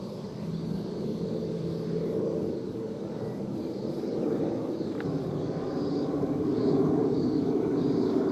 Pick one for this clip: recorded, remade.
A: remade